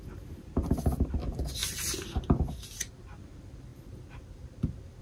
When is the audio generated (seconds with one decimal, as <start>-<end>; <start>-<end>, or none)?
none